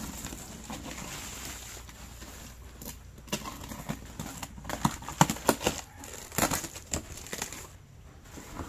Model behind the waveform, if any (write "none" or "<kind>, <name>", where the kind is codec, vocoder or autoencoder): none